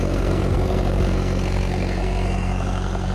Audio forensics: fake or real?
fake